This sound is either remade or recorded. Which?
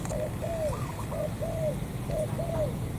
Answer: recorded